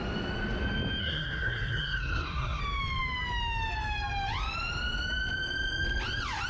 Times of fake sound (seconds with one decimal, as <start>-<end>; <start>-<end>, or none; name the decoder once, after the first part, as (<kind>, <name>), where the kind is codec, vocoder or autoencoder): 1.0-2.6 (codec, SNAC)